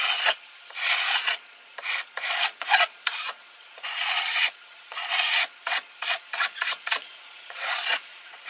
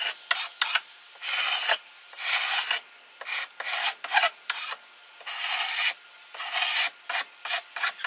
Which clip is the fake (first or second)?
first